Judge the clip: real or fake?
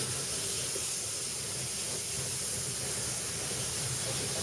real